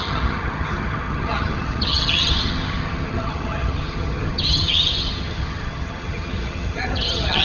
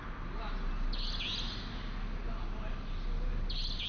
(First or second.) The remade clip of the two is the first